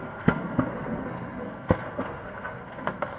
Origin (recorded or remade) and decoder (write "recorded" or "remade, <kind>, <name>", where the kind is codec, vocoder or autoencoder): remade, codec, SNAC